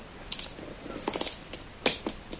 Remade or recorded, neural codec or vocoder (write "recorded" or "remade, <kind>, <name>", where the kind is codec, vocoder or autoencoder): recorded